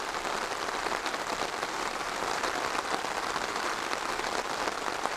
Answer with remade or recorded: remade